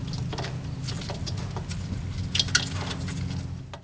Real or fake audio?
real